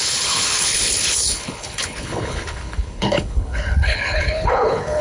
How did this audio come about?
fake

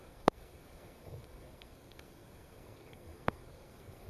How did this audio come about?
fake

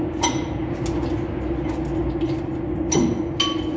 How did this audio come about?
real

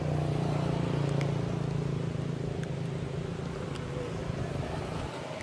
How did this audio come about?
real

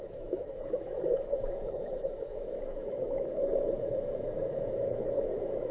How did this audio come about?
fake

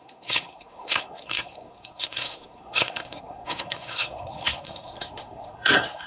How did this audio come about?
fake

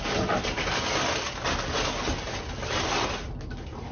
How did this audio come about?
real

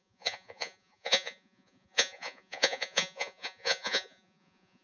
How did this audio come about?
fake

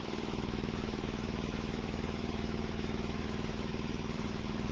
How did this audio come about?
fake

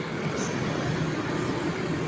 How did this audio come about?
real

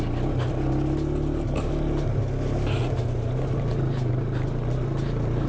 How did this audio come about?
real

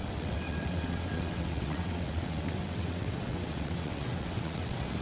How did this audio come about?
fake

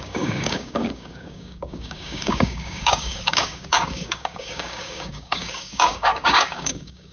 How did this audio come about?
fake